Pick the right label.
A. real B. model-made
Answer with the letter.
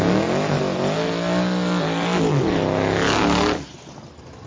A